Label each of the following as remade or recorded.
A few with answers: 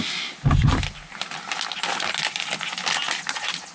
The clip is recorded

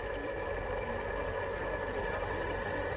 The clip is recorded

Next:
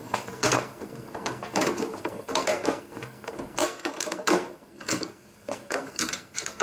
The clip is remade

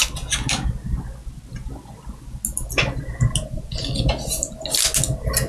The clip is recorded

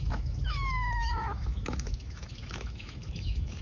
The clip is remade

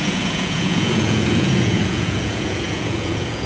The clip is remade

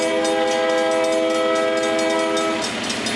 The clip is recorded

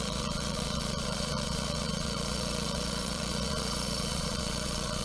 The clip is remade